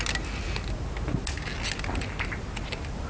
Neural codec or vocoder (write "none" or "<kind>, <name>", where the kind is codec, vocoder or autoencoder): none